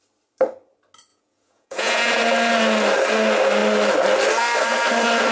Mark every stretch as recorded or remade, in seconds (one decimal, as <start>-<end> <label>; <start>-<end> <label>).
0.0-1.1 recorded; 1.1-2.2 remade; 2.2-5.3 recorded